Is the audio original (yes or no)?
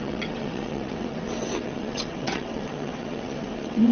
no